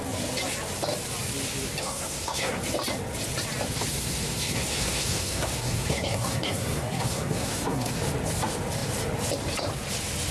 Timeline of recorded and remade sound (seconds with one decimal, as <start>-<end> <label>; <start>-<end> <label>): 0.0-1.8 recorded; 1.8-2.6 remade; 2.6-3.9 recorded; 3.9-8.0 remade; 8.0-10.3 recorded